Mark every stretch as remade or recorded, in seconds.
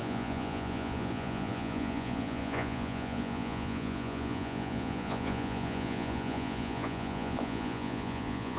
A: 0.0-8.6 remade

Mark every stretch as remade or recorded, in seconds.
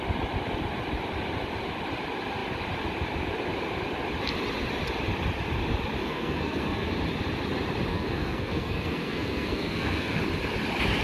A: 0.0-6.0 recorded; 6.0-6.9 remade; 6.9-7.9 recorded; 7.9-10.2 remade; 10.2-11.0 recorded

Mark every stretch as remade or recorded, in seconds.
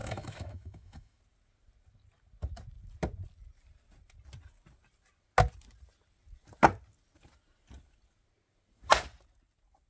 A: 0.0-1.2 remade; 1.2-9.9 recorded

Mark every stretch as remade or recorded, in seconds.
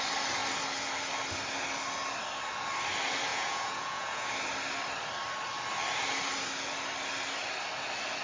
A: 0.0-3.3 recorded; 3.3-4.3 remade; 4.3-8.2 recorded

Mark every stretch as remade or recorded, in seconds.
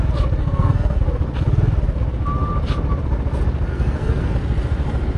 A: 0.0-0.4 recorded; 0.4-1.0 remade; 1.0-3.7 recorded; 3.7-4.3 remade; 4.3-5.2 recorded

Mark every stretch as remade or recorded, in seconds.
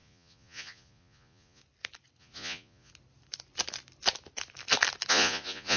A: 0.0-1.6 remade; 1.6-2.2 recorded; 2.2-2.9 remade; 2.9-5.1 recorded; 5.1-5.8 remade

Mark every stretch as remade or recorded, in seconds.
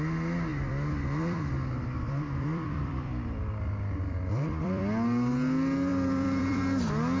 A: 0.0-0.5 recorded; 0.5-4.8 remade; 4.8-5.9 recorded; 5.9-6.6 remade; 6.6-7.2 recorded